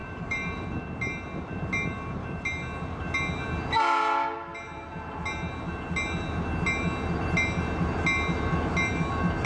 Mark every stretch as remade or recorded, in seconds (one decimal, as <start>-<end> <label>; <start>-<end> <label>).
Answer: 0.0-0.6 remade; 0.6-9.5 recorded

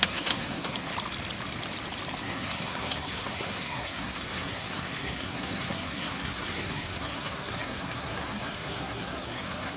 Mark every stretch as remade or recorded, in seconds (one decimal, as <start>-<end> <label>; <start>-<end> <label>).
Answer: 0.0-0.9 remade; 0.9-2.2 recorded; 2.2-9.8 remade

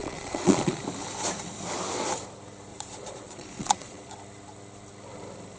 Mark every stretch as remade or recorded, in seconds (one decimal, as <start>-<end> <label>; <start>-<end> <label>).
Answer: 0.0-0.8 remade; 0.8-2.7 recorded; 2.7-4.1 remade; 4.1-5.6 recorded

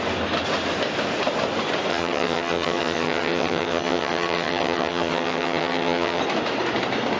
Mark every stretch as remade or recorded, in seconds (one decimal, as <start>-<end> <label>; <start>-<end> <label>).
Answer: 0.0-1.9 recorded; 1.9-6.2 remade; 6.2-7.2 recorded

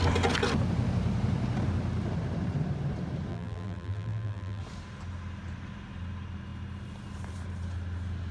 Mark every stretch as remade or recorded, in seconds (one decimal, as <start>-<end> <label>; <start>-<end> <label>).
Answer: 0.0-3.3 recorded; 3.3-4.6 remade; 4.6-8.3 recorded

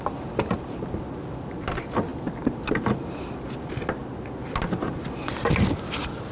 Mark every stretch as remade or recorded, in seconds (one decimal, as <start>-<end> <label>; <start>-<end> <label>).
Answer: 0.0-6.3 recorded

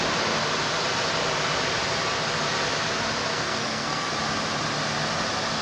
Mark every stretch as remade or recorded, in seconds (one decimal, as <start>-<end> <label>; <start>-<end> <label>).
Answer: 0.0-3.3 recorded; 3.3-4.1 remade; 4.1-5.6 recorded

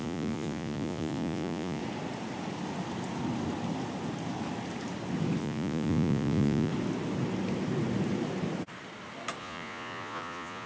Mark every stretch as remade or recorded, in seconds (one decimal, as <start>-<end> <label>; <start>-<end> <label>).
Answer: 0.0-1.8 remade; 1.8-5.4 recorded; 5.4-6.7 remade; 6.7-9.4 recorded; 9.4-10.7 remade